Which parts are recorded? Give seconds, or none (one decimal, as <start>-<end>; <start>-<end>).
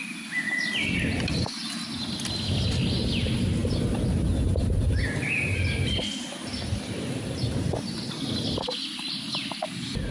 0.0-10.1